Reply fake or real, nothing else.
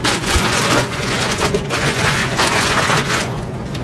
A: fake